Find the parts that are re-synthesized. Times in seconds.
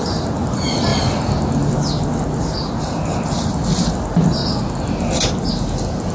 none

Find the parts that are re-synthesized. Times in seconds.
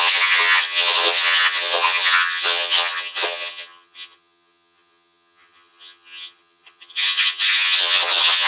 0.0-8.5 (vocoder, HiFi-GAN)